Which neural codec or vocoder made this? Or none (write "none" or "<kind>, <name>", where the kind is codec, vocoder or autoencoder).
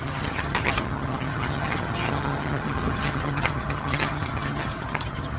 vocoder, HiFi-GAN